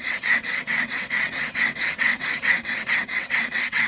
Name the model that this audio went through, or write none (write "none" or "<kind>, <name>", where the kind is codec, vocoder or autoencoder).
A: vocoder, WaveNeXt